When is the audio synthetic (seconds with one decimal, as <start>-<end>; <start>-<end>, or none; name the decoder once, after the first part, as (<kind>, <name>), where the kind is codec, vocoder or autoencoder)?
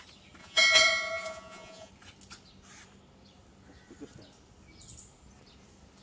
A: 0.4-1.9 (vocoder, Vocos)